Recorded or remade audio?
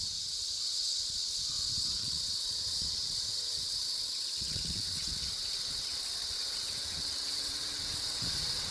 remade